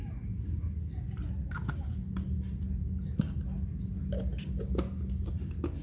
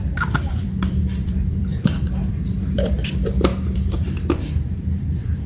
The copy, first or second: second